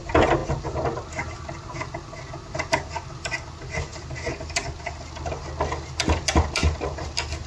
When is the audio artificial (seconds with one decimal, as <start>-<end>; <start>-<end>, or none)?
none